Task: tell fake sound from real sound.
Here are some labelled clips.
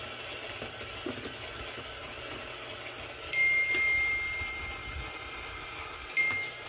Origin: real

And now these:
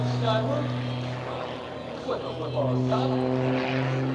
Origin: real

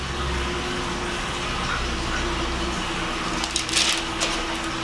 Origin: real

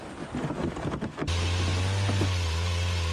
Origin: real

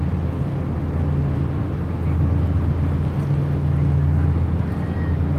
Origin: real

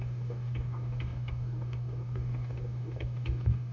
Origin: fake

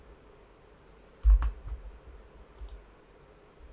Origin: real